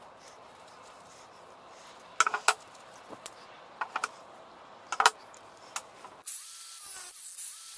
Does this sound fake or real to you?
real